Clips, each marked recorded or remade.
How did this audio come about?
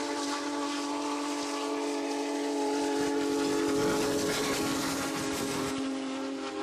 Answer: recorded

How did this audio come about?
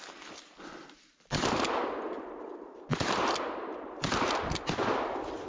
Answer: recorded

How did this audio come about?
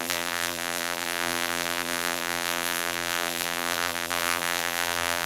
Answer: remade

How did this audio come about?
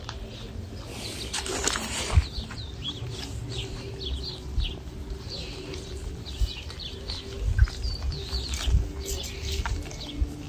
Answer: recorded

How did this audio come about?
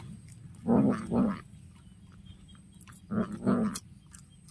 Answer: recorded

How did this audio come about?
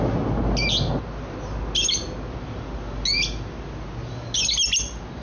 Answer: recorded